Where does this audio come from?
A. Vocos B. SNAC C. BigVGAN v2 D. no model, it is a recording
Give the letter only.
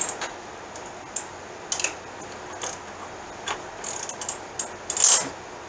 D